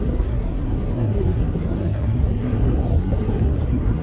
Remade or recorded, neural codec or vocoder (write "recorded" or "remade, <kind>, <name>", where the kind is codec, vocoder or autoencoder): remade, codec, SNAC